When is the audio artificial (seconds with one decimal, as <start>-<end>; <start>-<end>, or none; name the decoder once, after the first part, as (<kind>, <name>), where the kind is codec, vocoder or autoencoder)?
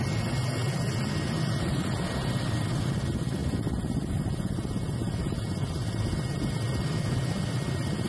none